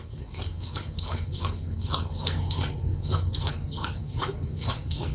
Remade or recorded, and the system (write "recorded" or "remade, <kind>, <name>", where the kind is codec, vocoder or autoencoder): remade, codec, SNAC